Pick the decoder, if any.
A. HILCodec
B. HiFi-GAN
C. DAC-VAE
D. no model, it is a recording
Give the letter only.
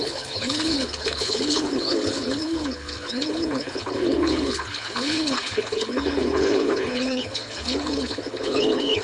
A